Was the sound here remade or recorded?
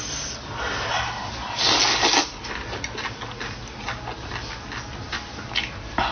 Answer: recorded